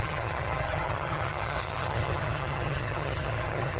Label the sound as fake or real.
fake